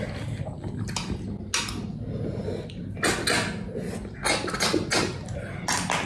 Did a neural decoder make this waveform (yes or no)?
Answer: no